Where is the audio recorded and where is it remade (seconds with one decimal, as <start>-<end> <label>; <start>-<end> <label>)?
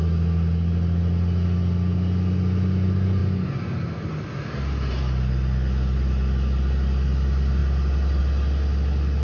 0.0-9.2 recorded